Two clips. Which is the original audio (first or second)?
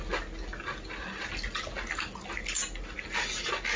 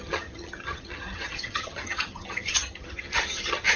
first